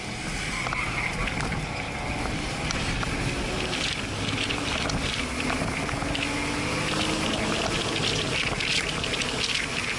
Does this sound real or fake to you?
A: real